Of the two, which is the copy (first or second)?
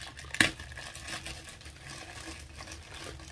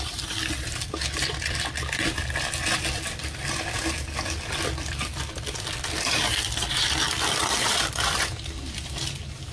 second